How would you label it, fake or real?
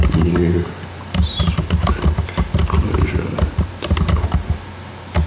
real